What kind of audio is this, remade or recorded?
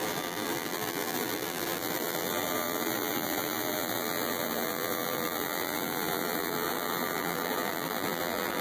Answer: remade